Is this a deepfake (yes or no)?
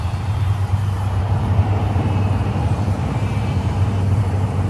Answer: yes